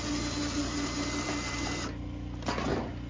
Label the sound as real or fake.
real